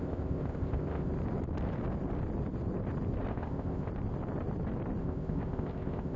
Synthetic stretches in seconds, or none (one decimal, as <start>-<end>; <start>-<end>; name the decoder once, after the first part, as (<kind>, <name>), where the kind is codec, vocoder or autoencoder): 0.0-1.1 (codec, ZipCodec); 3.3-3.9; 5.0-6.2